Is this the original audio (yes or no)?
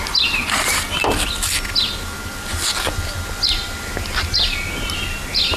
yes